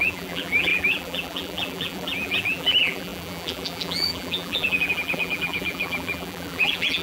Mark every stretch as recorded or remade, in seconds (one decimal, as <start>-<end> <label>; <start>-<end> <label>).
0.0-7.0 remade